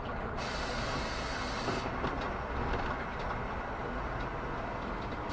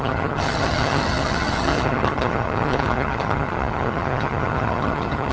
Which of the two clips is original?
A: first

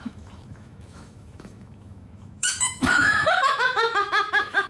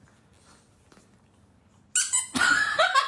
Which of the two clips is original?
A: second